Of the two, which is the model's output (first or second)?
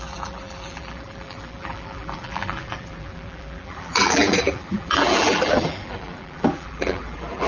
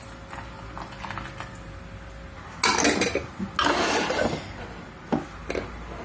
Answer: first